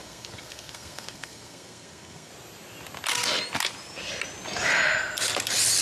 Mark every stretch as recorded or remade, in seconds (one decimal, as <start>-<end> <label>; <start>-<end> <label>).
0.0-2.3 remade; 2.3-5.8 recorded